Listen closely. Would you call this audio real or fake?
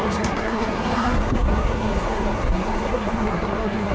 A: fake